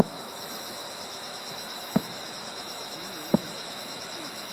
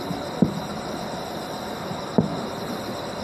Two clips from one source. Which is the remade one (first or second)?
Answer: first